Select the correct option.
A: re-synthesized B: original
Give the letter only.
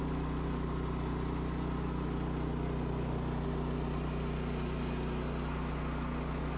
B